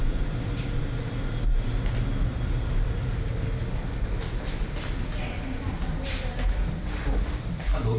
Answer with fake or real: real